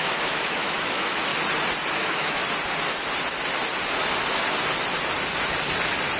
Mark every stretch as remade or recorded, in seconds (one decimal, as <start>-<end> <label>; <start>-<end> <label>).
0.0-1.3 remade; 1.3-1.9 recorded; 1.9-2.4 remade; 2.4-6.2 recorded